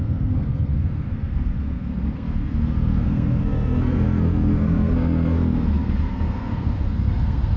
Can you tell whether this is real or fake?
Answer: fake